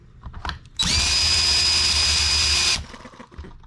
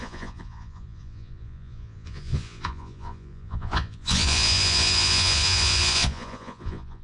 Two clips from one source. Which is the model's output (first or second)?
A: second